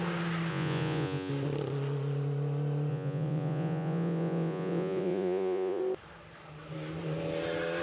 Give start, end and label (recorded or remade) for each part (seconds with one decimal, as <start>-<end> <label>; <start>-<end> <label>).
0.0-0.5 recorded; 0.5-1.3 remade; 1.3-2.9 recorded; 2.9-5.8 remade; 5.8-7.8 recorded